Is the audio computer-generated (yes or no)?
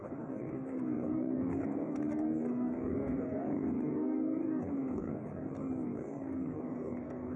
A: yes